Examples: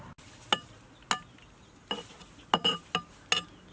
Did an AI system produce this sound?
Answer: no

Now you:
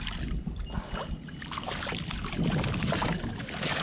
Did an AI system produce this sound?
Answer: no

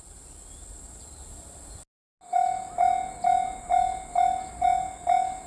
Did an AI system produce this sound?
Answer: no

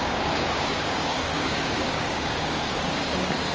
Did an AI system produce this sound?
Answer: yes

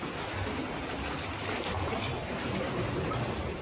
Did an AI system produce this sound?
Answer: no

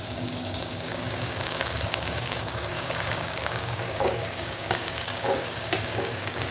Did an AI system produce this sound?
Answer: yes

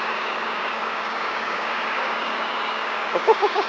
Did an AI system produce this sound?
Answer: yes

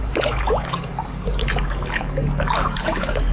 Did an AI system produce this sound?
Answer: yes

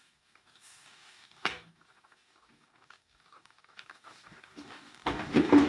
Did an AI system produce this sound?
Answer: yes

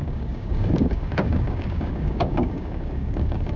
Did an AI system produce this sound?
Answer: yes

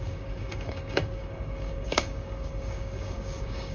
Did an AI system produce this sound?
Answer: yes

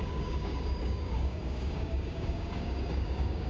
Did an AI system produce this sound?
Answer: yes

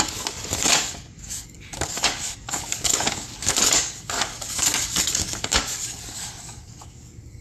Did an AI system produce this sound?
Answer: yes